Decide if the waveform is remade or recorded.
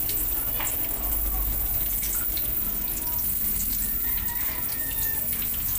recorded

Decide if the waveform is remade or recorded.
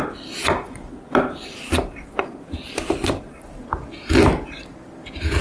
recorded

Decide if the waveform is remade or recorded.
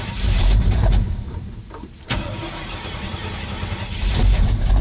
remade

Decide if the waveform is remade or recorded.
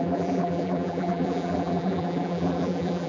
remade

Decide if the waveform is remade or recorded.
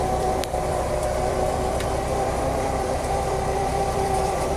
remade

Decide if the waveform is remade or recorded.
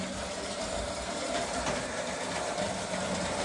remade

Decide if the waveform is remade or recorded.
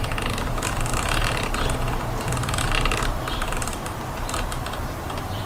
remade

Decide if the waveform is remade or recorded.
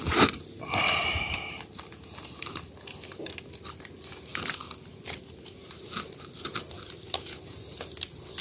recorded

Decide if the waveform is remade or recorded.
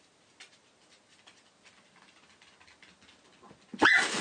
recorded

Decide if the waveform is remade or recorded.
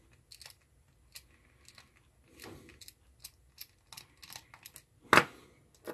recorded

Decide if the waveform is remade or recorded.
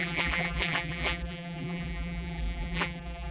remade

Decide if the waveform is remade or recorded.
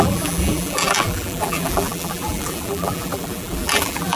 remade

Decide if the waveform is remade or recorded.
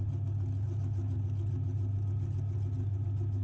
recorded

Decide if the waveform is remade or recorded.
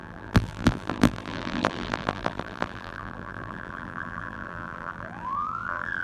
remade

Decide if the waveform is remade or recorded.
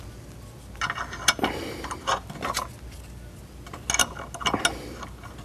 recorded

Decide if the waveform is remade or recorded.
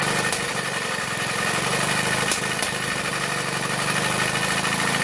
recorded